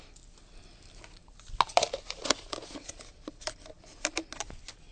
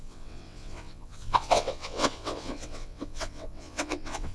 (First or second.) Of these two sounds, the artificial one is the second